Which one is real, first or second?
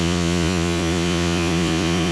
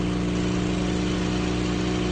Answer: second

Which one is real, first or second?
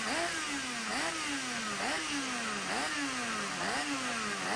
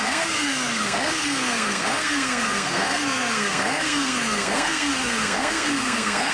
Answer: first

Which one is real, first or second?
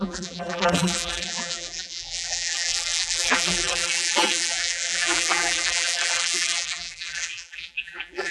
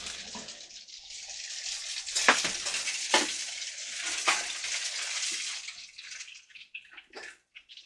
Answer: second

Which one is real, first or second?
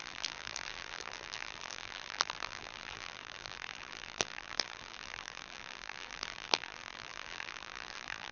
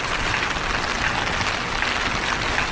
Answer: second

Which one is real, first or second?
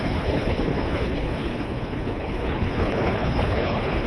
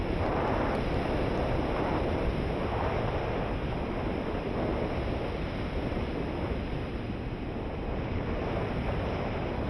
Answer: second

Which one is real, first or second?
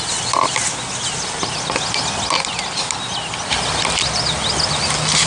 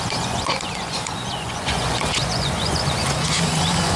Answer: first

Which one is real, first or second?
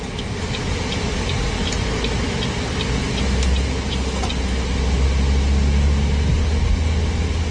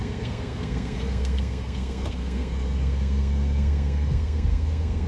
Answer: first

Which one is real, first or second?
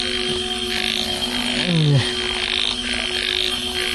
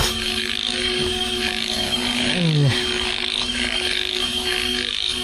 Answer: first